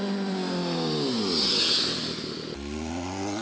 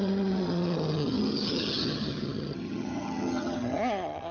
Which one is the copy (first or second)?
second